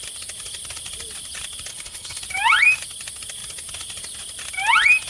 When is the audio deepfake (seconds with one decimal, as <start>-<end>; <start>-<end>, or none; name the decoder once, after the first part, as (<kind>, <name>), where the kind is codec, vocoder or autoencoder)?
1.7-2.2 (codec, HILCodec)